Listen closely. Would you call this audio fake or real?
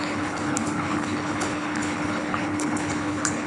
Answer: fake